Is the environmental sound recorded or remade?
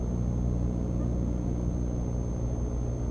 recorded